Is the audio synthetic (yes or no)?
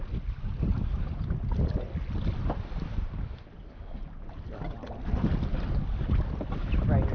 no